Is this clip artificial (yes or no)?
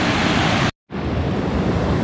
no